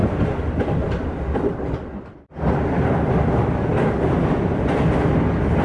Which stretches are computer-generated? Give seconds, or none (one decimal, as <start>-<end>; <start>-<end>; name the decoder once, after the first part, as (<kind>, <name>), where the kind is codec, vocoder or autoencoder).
none